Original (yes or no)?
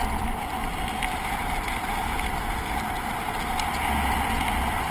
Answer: yes